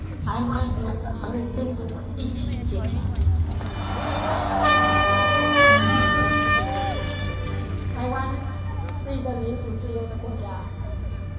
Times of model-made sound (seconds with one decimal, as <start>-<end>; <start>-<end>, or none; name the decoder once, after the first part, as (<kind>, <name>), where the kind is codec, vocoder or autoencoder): 0.4-2.2 (codec, SNAC); 4.3-6.3; 7.2-7.7